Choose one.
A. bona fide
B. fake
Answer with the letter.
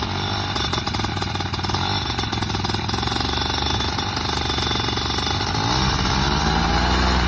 A